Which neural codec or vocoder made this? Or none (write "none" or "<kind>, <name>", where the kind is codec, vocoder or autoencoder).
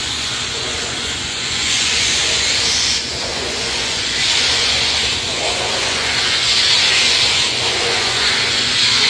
vocoder, Vocos